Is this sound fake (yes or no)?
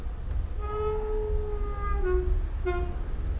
no